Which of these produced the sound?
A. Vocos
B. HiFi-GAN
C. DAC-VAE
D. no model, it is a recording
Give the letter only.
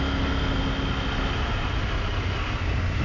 D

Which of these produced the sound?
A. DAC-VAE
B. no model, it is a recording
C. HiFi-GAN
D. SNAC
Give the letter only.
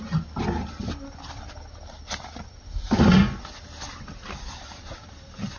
B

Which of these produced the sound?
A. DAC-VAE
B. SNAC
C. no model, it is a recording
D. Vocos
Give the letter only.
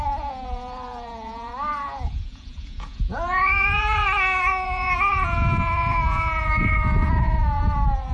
D